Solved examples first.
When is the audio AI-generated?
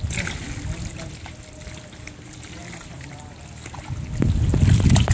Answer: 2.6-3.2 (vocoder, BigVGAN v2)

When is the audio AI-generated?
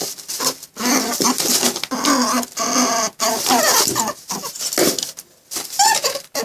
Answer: none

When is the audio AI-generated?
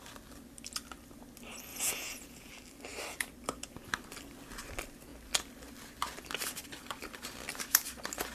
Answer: 1.7-2.5 (vocoder, Vocos)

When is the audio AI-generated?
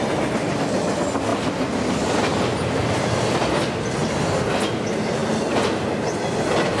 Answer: 1.3-3.4 (vocoder, BigVGAN v2); 4.0-4.7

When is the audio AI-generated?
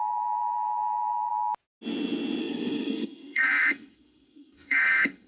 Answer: 0.0-1.3 (codec, SNAC); 2.4-5.3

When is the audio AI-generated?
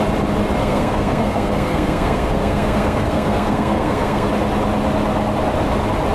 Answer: 0.6-4.3 (codec, SNAC)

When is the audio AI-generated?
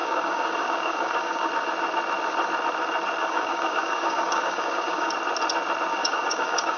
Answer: 0.0-1.5 (codec, DAC); 3.2-5.1; 5.9-6.8